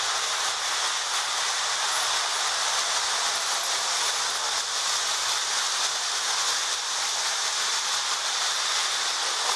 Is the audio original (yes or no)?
yes